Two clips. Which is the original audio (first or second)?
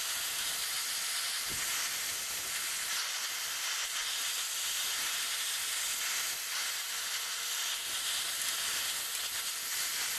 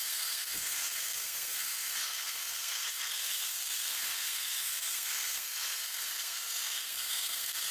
first